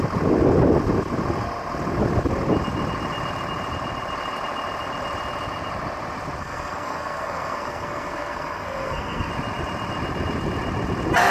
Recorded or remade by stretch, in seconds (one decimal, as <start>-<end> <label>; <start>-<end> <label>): 0.0-6.4 recorded; 6.4-9.3 remade; 9.3-11.3 recorded